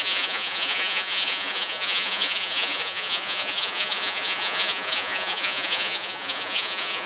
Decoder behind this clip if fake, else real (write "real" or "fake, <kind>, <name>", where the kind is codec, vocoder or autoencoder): fake, vocoder, Vocos